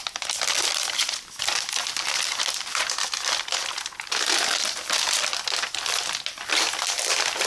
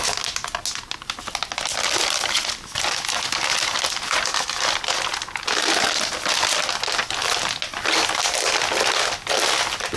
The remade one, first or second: first